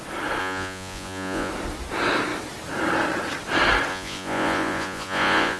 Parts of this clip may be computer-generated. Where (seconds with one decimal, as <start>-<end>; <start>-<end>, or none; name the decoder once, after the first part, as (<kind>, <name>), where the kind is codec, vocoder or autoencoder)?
0.4-1.5 (vocoder, Vocos); 3.9-5.6